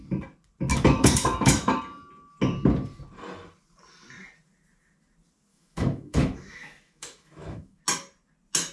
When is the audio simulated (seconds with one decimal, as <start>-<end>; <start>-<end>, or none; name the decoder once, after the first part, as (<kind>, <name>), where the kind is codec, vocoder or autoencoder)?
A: 0.7-1.8 (autoencoder, DAC-VAE); 5.5-7.8